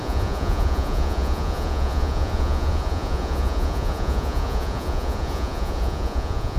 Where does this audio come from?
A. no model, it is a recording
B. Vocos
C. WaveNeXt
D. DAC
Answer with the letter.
B